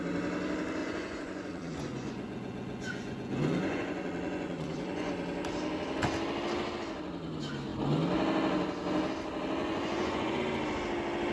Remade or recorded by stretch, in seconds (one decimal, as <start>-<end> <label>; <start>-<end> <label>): 0.0-0.8 recorded; 0.8-5.1 remade; 5.1-9.6 recorded; 9.6-10.4 remade; 10.4-11.3 recorded